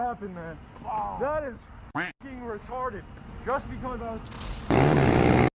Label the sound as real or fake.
real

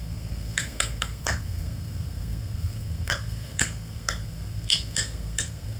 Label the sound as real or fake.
fake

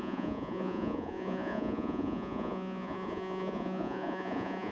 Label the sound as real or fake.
fake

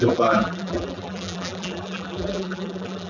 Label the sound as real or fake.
fake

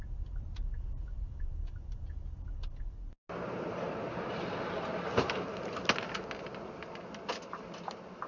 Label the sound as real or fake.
real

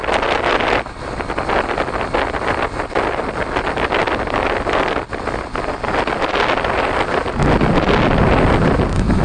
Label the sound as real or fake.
real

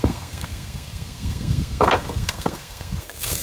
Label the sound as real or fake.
fake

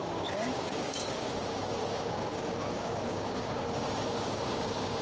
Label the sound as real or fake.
fake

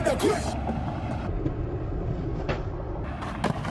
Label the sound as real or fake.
real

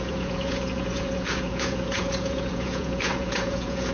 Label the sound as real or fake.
fake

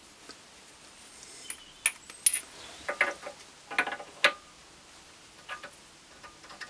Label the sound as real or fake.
real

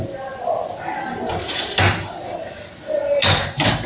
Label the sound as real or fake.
real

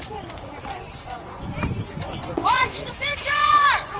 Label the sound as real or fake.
fake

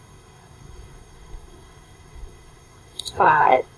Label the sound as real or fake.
fake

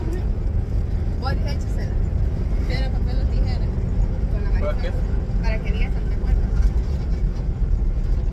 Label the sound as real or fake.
real